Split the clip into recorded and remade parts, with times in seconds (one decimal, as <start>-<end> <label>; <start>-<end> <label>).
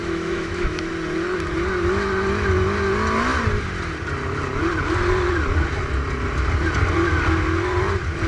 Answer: 0.0-0.9 remade; 0.9-8.3 recorded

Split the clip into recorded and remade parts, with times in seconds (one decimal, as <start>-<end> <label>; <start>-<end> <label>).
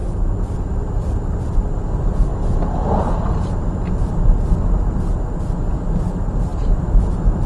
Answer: 0.0-7.5 recorded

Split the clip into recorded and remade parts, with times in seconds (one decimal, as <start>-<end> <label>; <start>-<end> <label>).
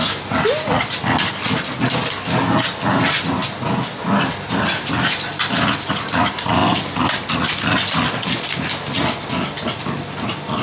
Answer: 0.0-6.6 recorded; 6.6-7.3 remade; 7.3-10.6 recorded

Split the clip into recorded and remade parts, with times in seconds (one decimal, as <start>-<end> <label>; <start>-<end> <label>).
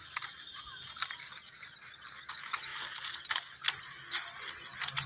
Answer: 0.0-5.1 recorded